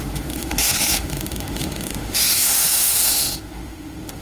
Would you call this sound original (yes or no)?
no